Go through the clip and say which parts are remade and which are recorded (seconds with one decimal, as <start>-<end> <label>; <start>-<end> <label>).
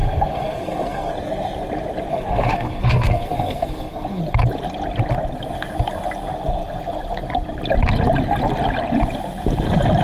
0.0-1.1 remade; 1.1-2.1 recorded; 2.1-4.2 remade; 4.2-10.0 recorded